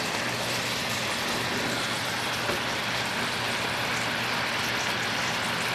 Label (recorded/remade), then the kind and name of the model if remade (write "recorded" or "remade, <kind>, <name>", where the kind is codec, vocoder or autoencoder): recorded